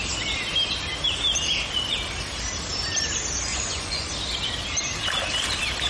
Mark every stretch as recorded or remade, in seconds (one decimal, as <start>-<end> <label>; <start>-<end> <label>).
0.0-3.5 recorded; 3.5-4.1 remade; 4.1-5.9 recorded